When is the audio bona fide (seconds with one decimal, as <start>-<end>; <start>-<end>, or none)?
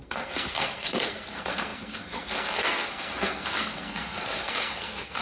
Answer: none